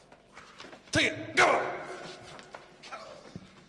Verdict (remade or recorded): recorded